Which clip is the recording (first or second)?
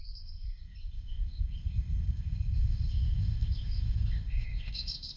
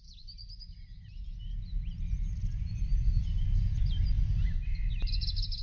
second